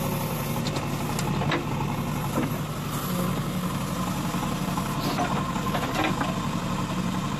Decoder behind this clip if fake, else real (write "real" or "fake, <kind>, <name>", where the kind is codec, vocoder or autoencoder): real